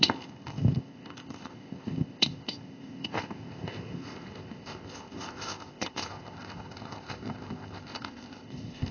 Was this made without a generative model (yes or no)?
no